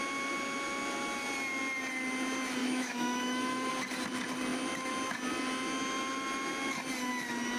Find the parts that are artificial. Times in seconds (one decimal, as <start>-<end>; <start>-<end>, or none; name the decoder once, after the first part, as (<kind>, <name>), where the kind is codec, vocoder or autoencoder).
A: 2.6-3.7 (autoencoder, DAC-VAE)